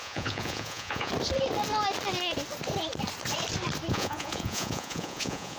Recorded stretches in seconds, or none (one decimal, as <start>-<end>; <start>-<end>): 1.1-3.9